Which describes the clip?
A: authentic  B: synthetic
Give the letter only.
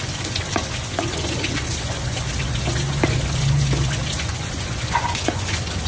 B